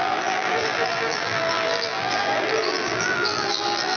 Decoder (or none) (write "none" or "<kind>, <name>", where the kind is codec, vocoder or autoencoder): vocoder, BigVGAN v2